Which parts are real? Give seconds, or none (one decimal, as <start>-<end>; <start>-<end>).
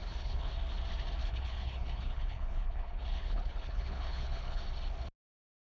0.5-1.2; 4.6-5.7